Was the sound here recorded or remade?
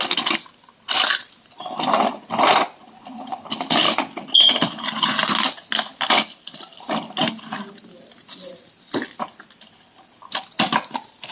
recorded